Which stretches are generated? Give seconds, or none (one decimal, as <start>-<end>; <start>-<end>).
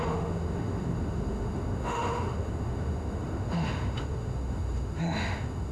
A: 0.0-5.7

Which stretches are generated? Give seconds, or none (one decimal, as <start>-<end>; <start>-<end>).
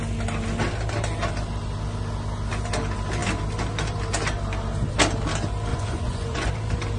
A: 5.7-6.5